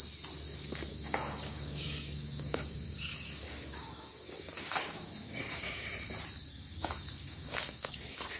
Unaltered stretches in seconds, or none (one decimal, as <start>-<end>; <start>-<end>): 0.0-0.9; 5.9-6.5